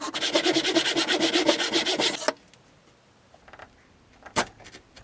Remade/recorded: recorded